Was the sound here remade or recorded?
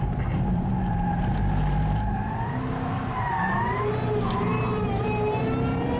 remade